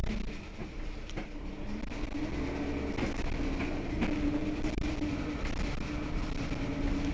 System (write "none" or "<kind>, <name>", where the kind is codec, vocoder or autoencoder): none